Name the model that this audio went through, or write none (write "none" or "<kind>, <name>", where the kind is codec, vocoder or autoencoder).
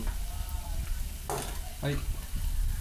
none